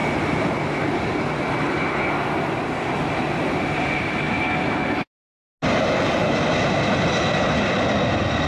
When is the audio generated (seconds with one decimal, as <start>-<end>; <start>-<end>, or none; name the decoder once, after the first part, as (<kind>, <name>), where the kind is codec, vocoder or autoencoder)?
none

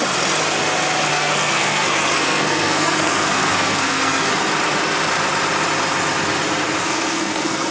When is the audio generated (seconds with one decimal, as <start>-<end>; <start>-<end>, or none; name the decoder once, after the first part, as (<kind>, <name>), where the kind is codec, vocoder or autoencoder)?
1.1-4.3 (codec, SNAC); 6.8-7.7

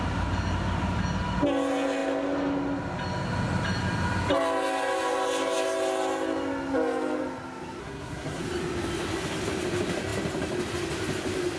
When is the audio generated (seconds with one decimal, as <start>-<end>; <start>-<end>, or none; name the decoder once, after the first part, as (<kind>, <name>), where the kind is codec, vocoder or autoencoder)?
7.8-8.4 (codec, SNAC)

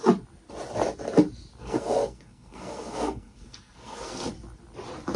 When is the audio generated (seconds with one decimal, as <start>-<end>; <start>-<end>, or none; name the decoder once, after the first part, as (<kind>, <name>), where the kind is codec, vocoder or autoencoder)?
1.6-4.3 (codec, SNAC)

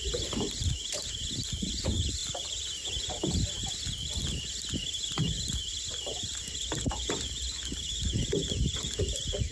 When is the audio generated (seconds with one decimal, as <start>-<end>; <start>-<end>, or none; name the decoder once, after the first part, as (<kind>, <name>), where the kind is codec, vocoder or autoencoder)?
none

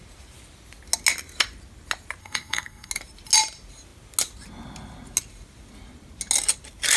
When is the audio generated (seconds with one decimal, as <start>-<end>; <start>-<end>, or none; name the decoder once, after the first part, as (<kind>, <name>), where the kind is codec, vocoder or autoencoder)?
2.2-2.9 (codec, SNAC)

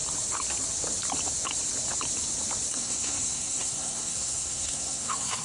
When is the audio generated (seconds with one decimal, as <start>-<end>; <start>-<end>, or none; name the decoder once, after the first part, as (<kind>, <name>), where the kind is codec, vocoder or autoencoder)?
2.7-5.4 (codec, SNAC)